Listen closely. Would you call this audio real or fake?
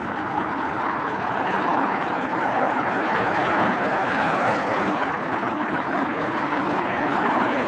fake